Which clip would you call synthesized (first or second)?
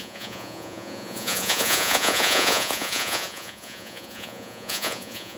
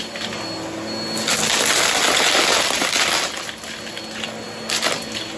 first